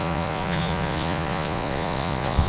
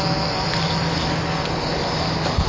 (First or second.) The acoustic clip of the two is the second